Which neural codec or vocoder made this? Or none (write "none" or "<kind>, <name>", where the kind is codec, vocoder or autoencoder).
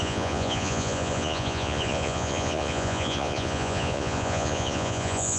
vocoder, Vocos